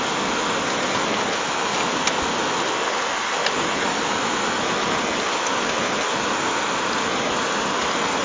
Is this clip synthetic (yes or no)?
no